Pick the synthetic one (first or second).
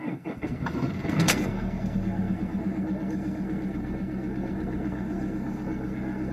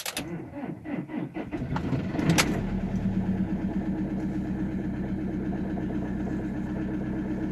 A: first